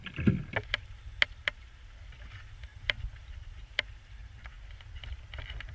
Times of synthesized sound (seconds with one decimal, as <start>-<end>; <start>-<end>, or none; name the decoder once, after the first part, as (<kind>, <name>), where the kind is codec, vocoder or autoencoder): 2.7-3.2 (vocoder, BigVGAN v2); 4.2-4.8